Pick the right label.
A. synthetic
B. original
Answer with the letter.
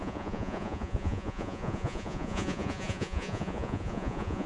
A